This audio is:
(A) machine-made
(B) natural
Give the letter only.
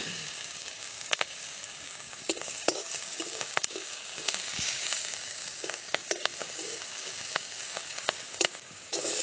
A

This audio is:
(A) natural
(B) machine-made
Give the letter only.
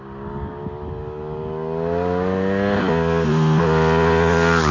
A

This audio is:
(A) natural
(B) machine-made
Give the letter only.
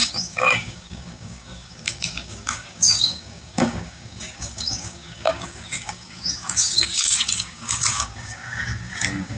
B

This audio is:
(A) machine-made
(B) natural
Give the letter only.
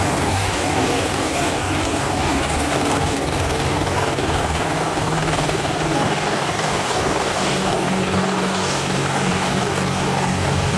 A